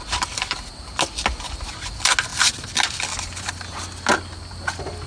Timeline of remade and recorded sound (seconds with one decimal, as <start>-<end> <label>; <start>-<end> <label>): 0.0-5.1 recorded

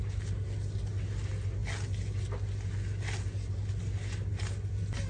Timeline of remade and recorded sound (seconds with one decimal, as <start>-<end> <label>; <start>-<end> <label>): 0.0-5.1 recorded

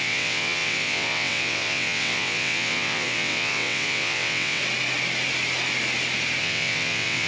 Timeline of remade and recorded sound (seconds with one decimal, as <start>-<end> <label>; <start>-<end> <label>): 0.0-4.6 remade; 4.6-6.4 recorded; 6.4-7.3 remade

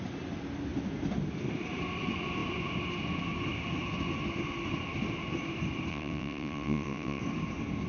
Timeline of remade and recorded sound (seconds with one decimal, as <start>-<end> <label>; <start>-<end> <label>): 0.0-5.9 recorded; 5.9-7.2 remade; 7.2-7.9 recorded

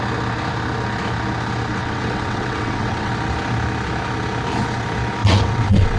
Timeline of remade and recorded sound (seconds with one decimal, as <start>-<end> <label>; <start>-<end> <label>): 0.0-1.7 recorded; 1.7-3.1 remade; 3.1-5.2 recorded; 5.2-6.0 remade